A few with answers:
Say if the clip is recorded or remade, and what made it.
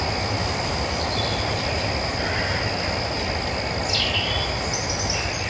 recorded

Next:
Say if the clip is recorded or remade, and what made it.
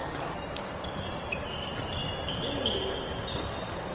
recorded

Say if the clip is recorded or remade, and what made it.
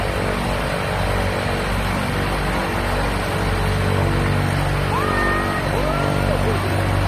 recorded